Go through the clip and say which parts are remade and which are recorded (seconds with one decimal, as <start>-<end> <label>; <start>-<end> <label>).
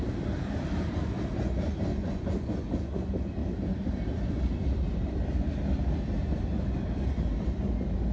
0.0-1.9 recorded; 1.9-3.0 remade; 3.0-8.1 recorded